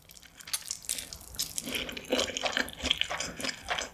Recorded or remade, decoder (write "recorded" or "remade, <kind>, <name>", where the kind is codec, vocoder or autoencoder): recorded